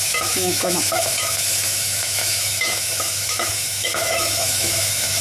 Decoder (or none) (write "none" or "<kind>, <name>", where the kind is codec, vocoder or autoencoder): autoencoder, DAC-VAE